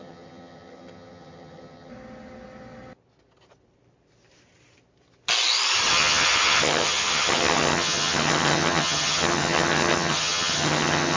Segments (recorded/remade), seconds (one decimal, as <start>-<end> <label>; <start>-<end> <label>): 0.0-1.9 remade; 1.9-5.9 recorded; 5.9-11.2 remade

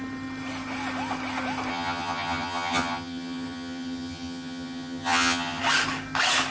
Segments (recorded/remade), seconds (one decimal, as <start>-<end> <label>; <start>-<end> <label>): 0.0-1.7 recorded; 1.7-5.6 remade; 5.6-6.5 recorded

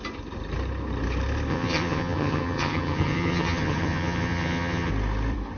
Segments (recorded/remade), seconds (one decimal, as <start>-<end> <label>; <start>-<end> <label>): 0.0-1.5 recorded; 1.5-4.9 remade; 4.9-5.6 recorded

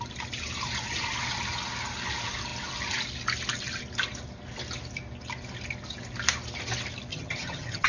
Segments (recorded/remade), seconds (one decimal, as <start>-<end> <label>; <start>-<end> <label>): 0.0-7.1 recorded; 7.1-7.9 remade

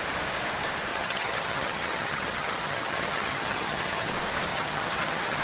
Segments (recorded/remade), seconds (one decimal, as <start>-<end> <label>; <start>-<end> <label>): 0.0-0.9 recorded; 0.9-4.1 remade; 4.1-4.5 recorded; 4.5-5.4 remade

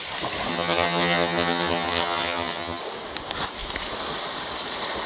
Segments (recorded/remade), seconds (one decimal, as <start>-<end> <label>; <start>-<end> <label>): 0.0-0.5 recorded; 0.5-2.8 remade; 2.8-5.1 recorded

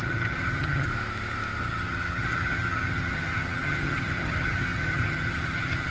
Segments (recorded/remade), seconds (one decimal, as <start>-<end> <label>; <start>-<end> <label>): 0.0-0.9 remade; 0.9-1.6 recorded; 1.6-5.9 remade